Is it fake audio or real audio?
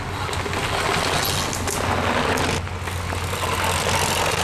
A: real